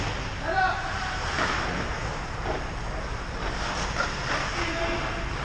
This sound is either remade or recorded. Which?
recorded